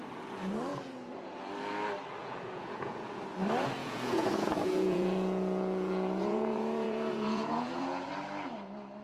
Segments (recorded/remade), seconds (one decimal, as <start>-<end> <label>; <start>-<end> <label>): 0.0-0.7 recorded; 0.7-1.5 remade; 1.5-2.2 recorded; 2.2-3.2 remade; 3.2-3.8 recorded; 3.8-8.1 remade; 8.1-9.0 recorded